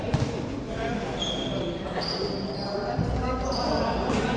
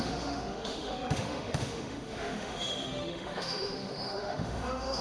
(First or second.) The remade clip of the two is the second